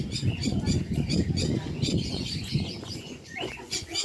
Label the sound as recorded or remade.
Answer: remade